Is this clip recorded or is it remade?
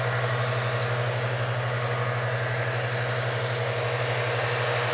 recorded